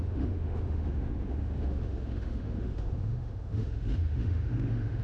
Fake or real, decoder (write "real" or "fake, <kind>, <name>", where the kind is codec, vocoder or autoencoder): fake, autoencoder, DAC-VAE